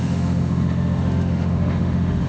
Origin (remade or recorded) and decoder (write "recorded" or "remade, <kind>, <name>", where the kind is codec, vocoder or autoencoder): remade, autoencoder, DAC-VAE